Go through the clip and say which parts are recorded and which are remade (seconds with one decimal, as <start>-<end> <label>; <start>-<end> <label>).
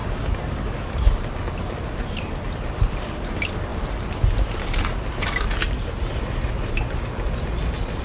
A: 0.0-8.0 recorded